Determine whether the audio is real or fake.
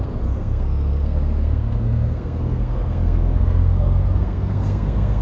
fake